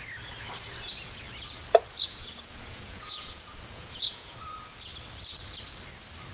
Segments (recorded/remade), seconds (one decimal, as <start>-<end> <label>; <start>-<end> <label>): 0.0-2.1 recorded; 2.1-4.4 remade; 4.4-6.3 recorded